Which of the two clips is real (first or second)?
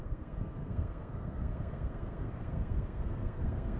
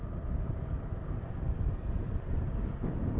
second